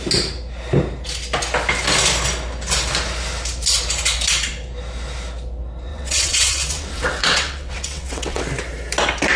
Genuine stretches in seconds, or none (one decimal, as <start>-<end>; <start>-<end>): 0.0-5.9; 8.4-9.4